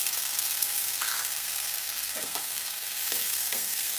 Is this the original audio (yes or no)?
no